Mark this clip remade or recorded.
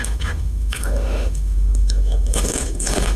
remade